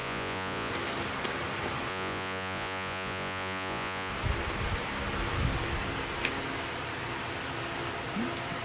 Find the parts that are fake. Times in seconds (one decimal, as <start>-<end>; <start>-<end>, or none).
0.0-0.7; 1.9-4.1